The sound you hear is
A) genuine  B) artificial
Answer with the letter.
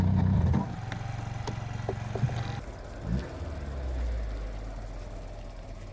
A